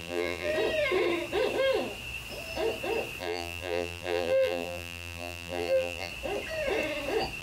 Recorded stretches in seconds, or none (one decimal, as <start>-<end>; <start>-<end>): 0.5-3.2; 6.1-7.4

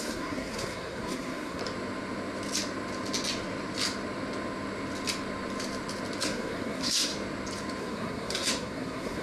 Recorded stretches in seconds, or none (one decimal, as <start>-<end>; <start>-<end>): 1.6-6.2; 7.1-7.8